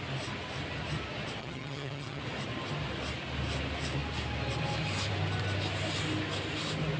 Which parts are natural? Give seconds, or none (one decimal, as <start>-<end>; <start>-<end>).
0.0-1.4; 2.2-7.0